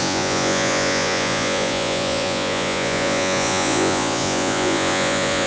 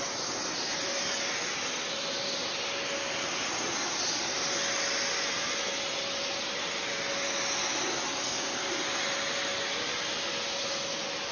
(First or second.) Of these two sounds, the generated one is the first